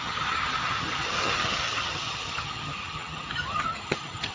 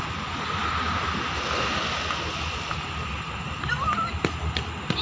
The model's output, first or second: first